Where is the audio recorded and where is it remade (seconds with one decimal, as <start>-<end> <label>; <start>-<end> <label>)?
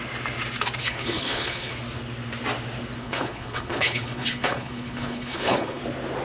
0.0-0.8 recorded; 0.8-1.7 remade; 1.7-3.0 recorded; 3.0-5.8 remade; 5.8-6.2 recorded